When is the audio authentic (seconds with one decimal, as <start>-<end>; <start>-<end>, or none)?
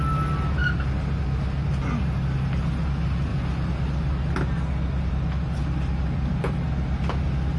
0.0-7.6